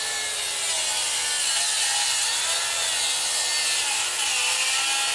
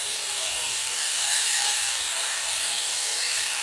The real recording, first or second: first